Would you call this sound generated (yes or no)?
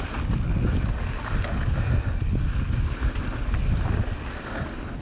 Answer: no